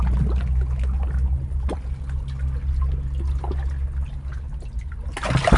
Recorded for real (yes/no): yes